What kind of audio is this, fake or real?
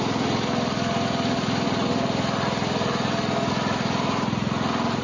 real